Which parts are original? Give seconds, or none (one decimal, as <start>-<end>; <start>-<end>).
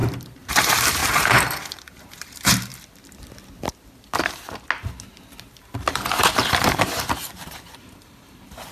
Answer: 2.7-5.9